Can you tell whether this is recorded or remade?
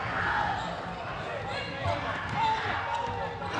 recorded